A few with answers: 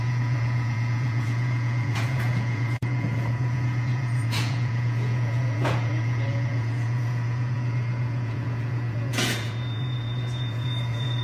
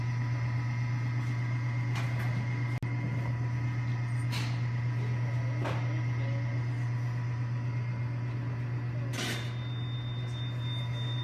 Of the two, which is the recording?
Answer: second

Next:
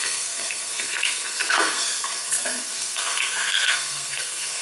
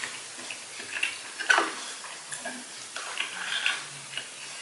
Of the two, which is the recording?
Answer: second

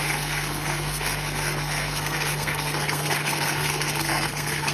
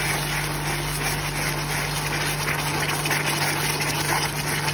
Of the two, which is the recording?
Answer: second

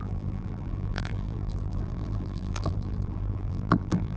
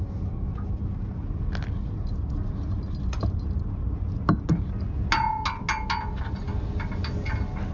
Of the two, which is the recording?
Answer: second